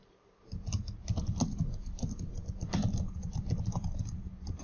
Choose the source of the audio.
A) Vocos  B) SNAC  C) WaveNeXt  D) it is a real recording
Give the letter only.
D